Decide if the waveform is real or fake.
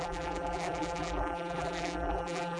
fake